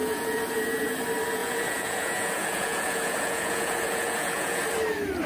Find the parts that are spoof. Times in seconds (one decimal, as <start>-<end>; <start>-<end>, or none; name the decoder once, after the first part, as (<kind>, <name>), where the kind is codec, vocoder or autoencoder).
0.0-0.9 (vocoder, Vocos); 1.4-4.6